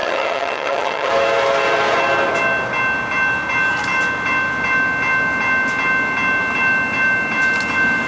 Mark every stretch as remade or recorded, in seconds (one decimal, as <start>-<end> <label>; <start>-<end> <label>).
0.0-1.1 remade; 1.1-8.1 recorded